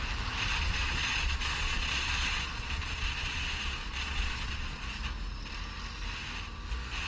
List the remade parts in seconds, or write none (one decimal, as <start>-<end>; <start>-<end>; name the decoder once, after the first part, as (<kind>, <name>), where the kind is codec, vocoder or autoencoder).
0.5-4.8 (vocoder, Vocos)